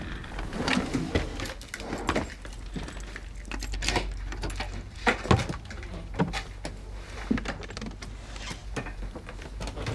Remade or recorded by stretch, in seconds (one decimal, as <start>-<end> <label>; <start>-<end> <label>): 0.0-9.9 recorded